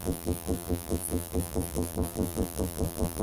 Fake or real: fake